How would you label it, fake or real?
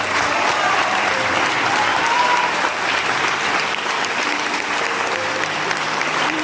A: fake